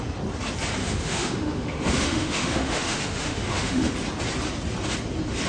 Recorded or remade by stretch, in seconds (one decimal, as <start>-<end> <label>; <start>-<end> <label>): 0.0-0.8 recorded; 0.8-3.9 remade; 3.9-5.5 recorded